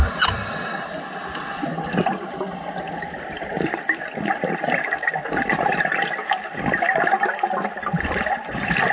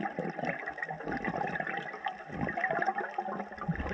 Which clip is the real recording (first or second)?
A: second